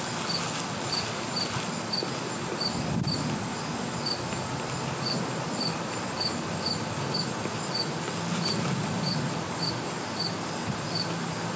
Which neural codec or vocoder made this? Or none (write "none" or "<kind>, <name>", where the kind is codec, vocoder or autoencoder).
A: none